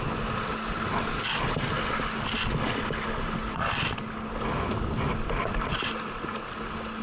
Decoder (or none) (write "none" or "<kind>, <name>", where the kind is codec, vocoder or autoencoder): none